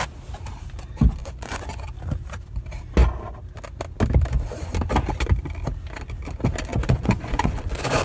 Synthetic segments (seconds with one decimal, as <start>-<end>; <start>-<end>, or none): 1.2-1.8; 6.7-8.0